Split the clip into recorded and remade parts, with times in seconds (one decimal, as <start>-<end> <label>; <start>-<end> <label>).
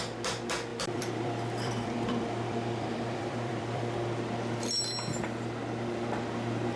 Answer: 0.0-0.7 recorded; 0.7-4.8 remade; 4.8-6.8 recorded